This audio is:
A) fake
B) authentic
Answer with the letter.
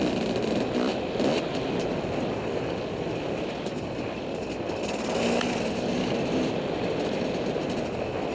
B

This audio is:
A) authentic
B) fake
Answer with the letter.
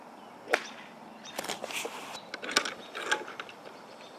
A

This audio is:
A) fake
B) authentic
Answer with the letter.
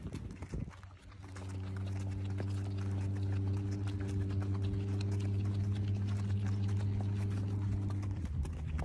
B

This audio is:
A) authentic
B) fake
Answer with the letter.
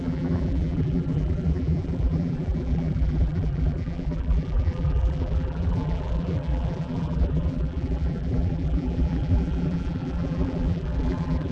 B